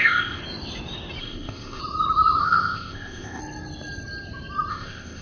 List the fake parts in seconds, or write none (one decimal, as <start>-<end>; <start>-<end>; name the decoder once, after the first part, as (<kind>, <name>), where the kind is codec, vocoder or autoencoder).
0.0-0.4 (codec, ZipCodec); 1.2-1.8; 2.4-3.4; 4.7-5.2